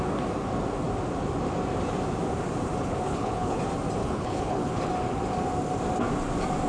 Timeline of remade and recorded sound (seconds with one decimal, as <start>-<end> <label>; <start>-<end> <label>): 0.0-2.8 recorded; 2.8-3.6 remade; 3.6-4.0 recorded; 4.0-4.9 remade; 4.9-6.7 recorded